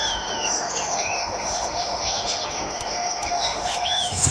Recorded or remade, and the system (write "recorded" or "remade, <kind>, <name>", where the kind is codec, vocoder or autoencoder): remade, autoencoder, DAC-VAE